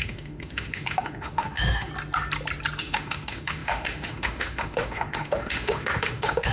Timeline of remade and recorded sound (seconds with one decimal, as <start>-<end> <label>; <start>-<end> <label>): 0.0-1.9 remade; 1.9-2.8 recorded; 2.8-6.5 remade